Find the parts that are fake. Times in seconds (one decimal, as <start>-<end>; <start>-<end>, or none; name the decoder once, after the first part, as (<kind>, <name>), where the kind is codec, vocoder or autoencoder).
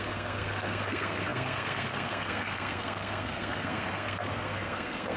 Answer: 0.0-5.2 (codec, SNAC)